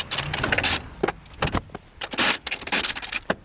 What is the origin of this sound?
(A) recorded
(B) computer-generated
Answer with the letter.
A